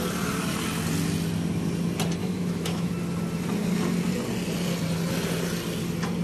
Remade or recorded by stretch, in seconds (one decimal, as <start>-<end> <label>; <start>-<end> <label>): 0.0-2.2 recorded; 2.2-2.9 remade; 2.9-6.2 recorded